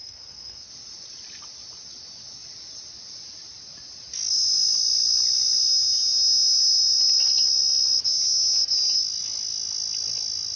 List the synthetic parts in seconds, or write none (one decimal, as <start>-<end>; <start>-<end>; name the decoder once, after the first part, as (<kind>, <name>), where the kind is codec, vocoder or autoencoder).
0.0-0.7 (codec, SNAC)